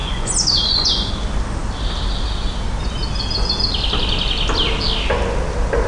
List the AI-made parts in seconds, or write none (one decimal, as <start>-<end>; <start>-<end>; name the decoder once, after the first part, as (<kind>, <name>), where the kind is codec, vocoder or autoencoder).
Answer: 0.0-1.1 (vocoder, Vocos)